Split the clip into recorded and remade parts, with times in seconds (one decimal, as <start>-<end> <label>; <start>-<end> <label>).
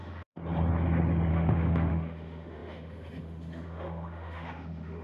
0.0-0.4 remade; 0.4-1.3 recorded; 1.3-5.0 remade